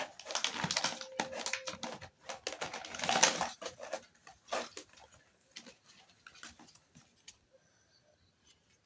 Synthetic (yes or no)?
no